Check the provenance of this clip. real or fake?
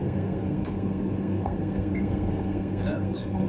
fake